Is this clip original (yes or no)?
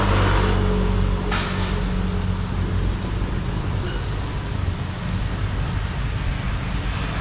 yes